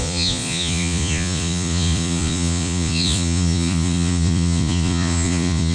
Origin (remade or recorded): remade